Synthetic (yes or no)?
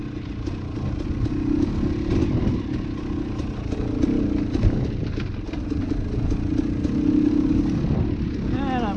no